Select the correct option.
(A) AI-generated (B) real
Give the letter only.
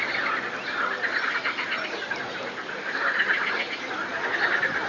B